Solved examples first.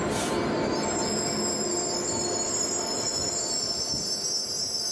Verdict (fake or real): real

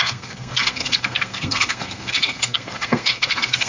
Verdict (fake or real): fake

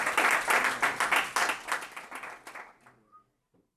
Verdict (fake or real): real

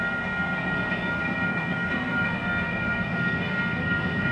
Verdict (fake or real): fake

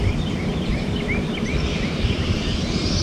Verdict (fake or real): real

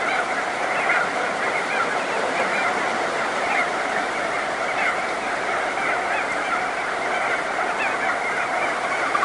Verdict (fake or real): real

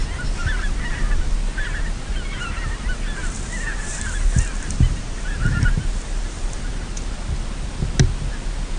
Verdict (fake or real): real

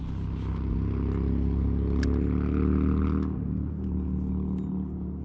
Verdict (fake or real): real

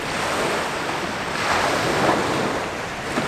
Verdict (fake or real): real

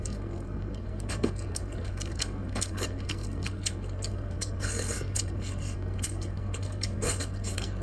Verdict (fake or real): fake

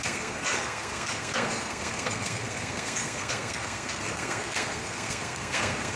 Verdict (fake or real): fake